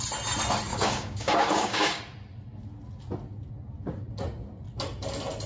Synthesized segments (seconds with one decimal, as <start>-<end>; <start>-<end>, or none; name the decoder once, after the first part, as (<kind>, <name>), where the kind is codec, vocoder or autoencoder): 0.7-2.0 (codec, DAC)